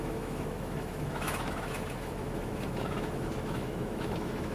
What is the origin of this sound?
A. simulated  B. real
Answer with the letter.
A